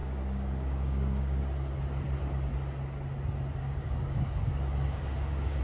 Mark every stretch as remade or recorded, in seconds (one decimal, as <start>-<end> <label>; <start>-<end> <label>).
0.0-1.4 remade; 1.4-3.6 recorded; 3.6-5.6 remade